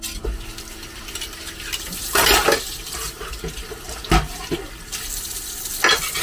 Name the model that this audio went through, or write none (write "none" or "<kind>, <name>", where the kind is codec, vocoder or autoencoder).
none